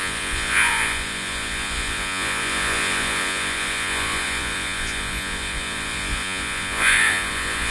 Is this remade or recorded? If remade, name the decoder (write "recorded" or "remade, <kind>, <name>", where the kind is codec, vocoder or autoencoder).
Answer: remade, vocoder, Vocos